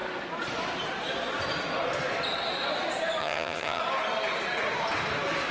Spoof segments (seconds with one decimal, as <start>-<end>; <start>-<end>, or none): 3.2-3.8